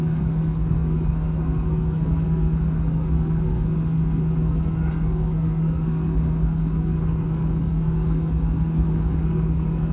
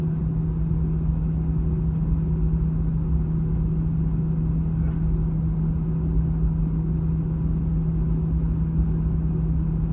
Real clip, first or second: second